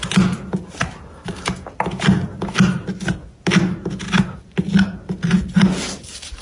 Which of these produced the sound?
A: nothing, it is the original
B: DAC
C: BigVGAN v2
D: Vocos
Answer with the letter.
A